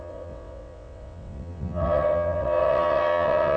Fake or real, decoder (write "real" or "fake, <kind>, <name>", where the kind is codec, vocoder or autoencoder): fake, vocoder, WaveNeXt